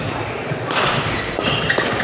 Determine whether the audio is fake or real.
real